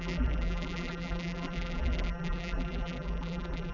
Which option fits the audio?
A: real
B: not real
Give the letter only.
B